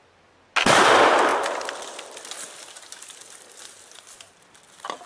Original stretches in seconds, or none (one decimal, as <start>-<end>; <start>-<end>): 0.0-5.1